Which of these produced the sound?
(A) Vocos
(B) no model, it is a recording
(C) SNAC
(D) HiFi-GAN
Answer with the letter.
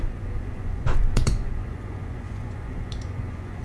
A